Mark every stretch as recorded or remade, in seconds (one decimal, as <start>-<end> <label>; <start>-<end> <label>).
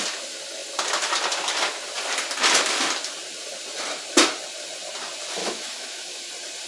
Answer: 0.0-5.4 recorded; 5.4-6.3 remade; 6.3-6.7 recorded